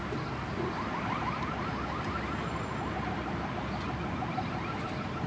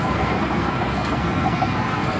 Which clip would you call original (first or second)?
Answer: first